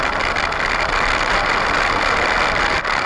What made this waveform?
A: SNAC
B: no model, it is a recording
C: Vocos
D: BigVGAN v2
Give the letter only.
B